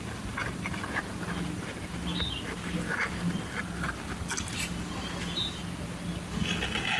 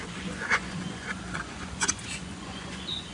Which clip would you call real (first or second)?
first